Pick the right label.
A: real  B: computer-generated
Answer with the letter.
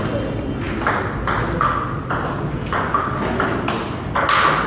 A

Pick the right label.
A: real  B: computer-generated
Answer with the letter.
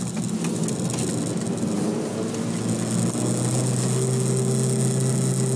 A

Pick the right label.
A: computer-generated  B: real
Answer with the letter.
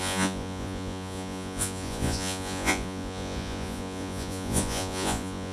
A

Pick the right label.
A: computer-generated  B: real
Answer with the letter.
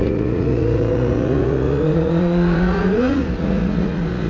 A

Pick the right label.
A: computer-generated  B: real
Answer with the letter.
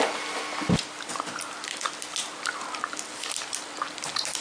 B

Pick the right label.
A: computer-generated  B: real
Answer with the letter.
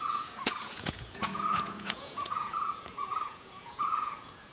A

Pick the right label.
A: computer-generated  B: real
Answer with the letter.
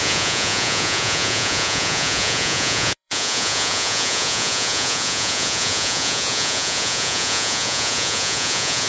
A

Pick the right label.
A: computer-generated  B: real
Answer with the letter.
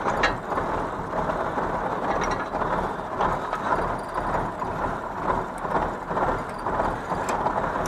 B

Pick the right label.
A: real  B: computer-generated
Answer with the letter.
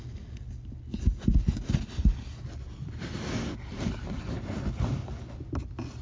A